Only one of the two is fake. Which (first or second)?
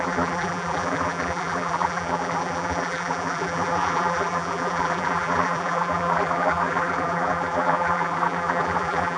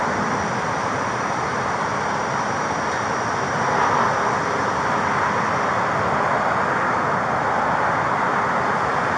first